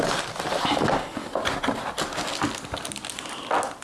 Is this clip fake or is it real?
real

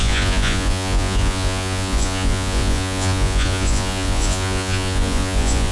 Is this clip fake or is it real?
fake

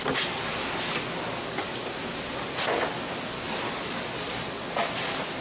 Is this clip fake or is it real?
real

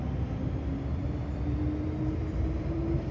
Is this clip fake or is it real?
real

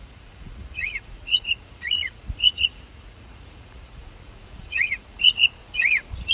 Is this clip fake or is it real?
fake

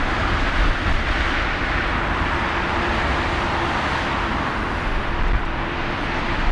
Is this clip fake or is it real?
real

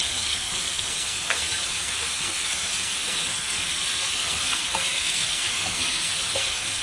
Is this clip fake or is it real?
fake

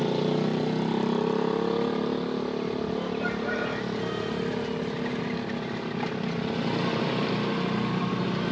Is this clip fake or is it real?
real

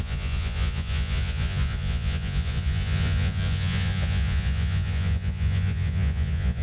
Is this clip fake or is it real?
fake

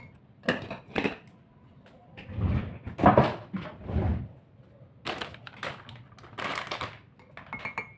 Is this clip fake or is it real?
real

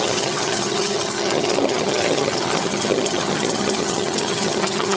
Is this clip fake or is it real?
fake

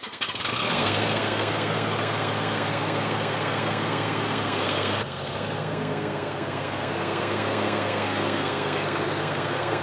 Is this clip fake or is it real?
fake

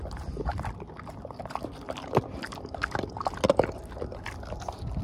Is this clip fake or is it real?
real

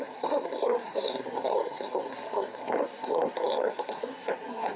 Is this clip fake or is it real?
fake